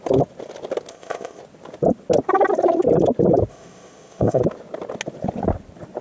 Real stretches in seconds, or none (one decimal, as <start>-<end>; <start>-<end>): 0.0-0.9; 1.4-3.5; 4.4-6.0